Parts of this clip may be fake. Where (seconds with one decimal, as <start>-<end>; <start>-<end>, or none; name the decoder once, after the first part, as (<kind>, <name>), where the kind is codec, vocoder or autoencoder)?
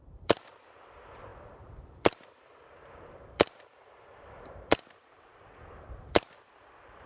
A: 0.0-7.1 (vocoder, BigVGAN v2)